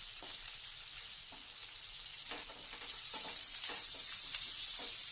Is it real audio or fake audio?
fake